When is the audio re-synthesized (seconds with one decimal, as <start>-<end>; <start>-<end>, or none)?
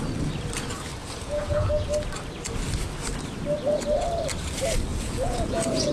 1.0-1.7; 4.9-5.9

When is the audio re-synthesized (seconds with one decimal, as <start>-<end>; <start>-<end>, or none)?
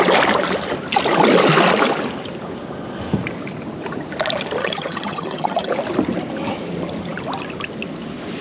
4.6-5.7